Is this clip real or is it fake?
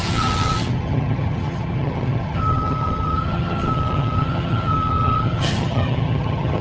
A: fake